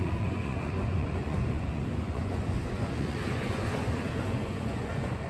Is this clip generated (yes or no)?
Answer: yes